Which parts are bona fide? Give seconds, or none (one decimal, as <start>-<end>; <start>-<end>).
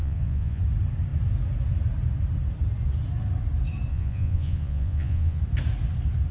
0.6-3.9; 5.4-6.3